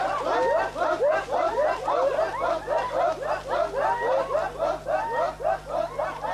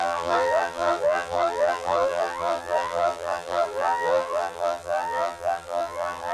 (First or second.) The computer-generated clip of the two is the second